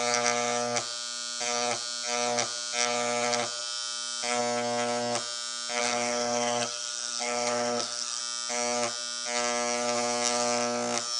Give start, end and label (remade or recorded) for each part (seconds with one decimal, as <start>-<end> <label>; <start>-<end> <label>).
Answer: 0.0-5.8 recorded; 5.8-8.2 remade; 8.2-11.2 recorded